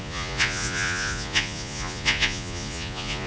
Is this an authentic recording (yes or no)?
no